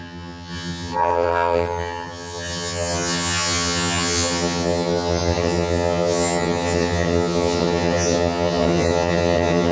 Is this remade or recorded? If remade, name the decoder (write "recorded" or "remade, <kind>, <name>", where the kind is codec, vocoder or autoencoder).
remade, vocoder, HiFi-GAN